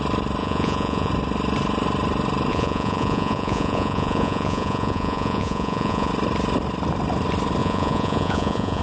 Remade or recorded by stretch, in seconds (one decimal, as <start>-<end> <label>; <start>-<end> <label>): 0.0-0.4 recorded; 0.4-1.1 remade; 1.1-2.5 recorded; 2.5-6.1 remade; 6.1-7.6 recorded; 7.6-8.8 remade